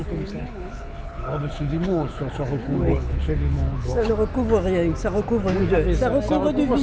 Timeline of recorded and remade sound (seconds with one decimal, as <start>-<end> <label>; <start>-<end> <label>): 0.0-4.1 remade; 4.1-6.8 recorded

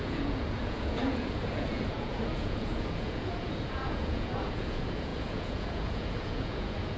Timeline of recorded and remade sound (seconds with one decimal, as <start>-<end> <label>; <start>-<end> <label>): 0.0-7.0 remade

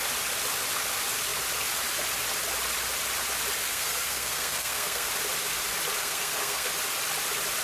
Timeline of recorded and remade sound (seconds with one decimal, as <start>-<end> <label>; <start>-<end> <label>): 0.0-3.6 recorded; 3.6-5.1 remade; 5.1-6.0 recorded; 6.0-6.7 remade; 6.7-7.6 recorded

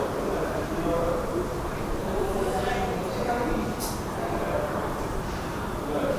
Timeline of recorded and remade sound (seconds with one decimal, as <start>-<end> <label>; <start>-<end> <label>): 0.0-6.2 remade